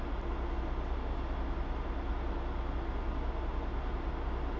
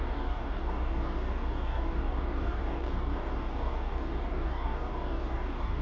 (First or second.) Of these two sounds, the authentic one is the first